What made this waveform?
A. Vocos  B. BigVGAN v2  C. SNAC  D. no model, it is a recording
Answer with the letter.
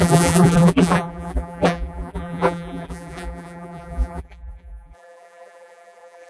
B